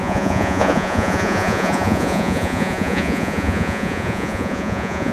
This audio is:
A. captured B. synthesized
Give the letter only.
B